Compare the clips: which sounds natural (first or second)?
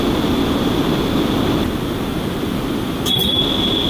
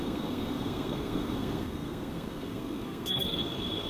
first